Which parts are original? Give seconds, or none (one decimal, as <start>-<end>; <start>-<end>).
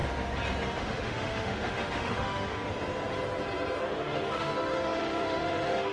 0.0-0.8; 2.7-3.8